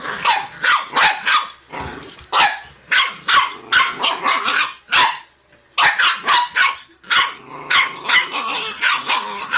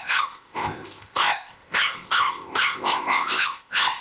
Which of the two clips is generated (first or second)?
second